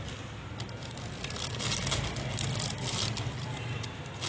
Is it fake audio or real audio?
real